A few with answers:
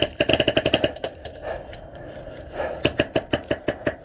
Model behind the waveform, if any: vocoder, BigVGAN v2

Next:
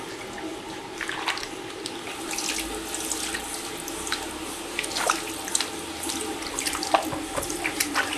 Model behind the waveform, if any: none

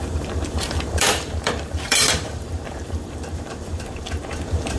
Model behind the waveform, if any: vocoder, BigVGAN v2